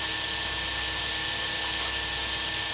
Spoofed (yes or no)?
no